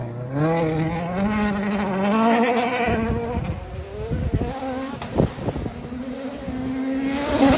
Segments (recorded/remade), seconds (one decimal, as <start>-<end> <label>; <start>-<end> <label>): 0.0-7.6 recorded